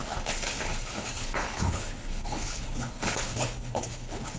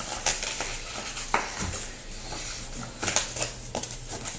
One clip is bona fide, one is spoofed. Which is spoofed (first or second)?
first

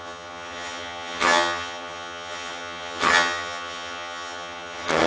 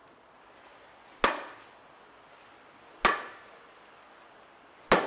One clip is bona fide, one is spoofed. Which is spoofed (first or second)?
first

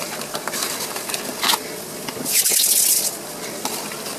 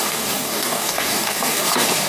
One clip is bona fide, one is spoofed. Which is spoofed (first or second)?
second